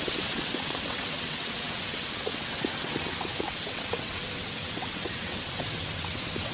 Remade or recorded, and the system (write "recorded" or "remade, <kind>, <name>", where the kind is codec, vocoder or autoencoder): remade, vocoder, WaveNeXt